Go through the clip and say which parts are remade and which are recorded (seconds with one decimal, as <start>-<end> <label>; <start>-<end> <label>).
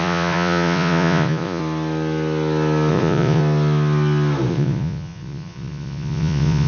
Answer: 0.0-1.6 remade; 1.6-2.9 recorded; 2.9-3.4 remade; 3.4-4.5 recorded; 4.5-6.7 remade